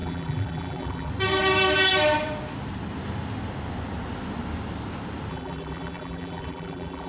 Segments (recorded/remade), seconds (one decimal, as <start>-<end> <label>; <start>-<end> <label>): 0.0-1.1 remade; 1.1-5.3 recorded; 5.3-7.1 remade